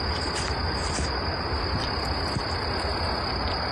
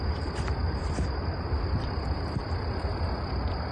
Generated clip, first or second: second